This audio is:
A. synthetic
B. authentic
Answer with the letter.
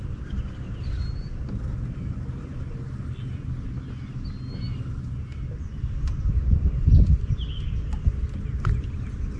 B